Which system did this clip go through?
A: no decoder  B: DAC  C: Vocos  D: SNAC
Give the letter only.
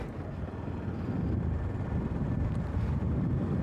A